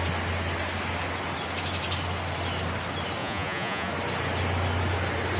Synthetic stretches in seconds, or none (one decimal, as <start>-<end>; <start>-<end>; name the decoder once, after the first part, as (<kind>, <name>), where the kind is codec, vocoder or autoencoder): 3.2-3.9 (vocoder, Vocos)